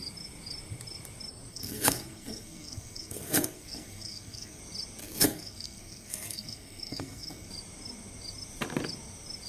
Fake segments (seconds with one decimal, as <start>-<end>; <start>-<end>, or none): 1.5-4.6; 5.0-7.5